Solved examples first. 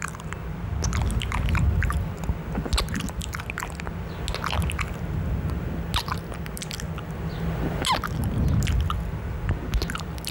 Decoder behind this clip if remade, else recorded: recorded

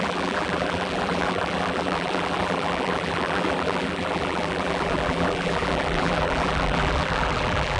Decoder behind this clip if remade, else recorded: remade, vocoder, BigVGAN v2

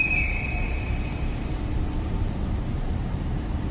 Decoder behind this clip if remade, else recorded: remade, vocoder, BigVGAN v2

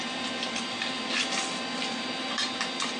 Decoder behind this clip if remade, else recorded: recorded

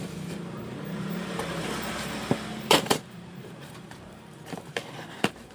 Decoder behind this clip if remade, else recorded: remade, vocoder, BigVGAN v2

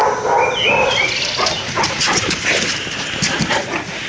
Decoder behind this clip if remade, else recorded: recorded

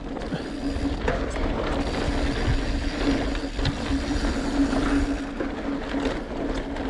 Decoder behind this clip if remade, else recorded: recorded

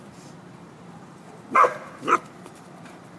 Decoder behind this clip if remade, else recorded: remade, vocoder, BigVGAN v2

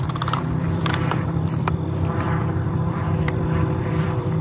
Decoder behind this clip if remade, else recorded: remade, vocoder, BigVGAN v2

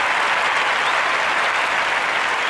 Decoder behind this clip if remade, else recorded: recorded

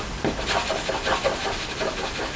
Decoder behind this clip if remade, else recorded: recorded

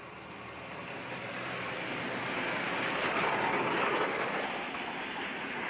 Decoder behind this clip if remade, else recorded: recorded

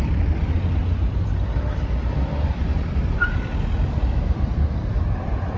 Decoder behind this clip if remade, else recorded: remade, vocoder, BigVGAN v2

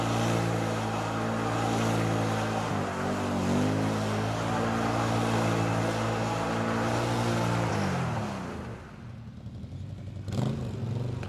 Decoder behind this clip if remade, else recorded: recorded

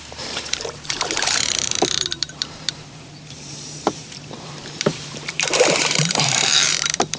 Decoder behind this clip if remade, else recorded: remade, vocoder, BigVGAN v2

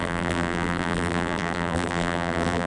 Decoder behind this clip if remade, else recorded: remade, vocoder, BigVGAN v2